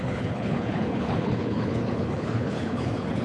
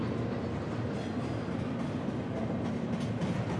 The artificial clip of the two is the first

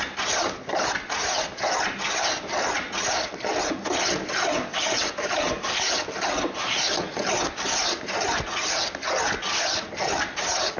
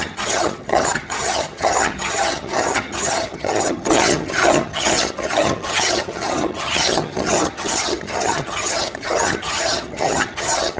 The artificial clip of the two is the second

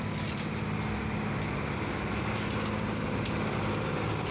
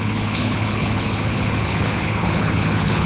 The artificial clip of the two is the second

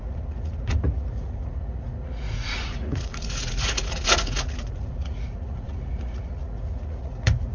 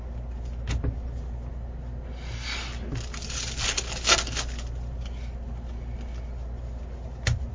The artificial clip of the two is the first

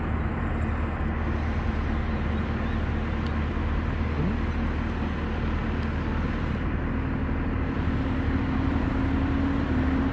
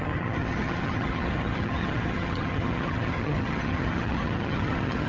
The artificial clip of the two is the second